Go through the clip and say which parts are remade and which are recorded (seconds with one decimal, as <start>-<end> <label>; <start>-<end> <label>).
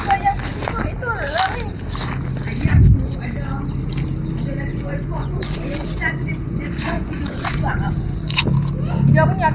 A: 0.0-4.7 recorded; 4.7-8.4 remade; 8.4-9.5 recorded